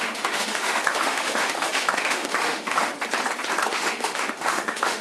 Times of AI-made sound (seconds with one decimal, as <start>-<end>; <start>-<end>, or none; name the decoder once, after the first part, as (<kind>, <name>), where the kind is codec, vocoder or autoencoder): 0.0-2.9 (autoencoder, DAC-VAE); 3.7-5.0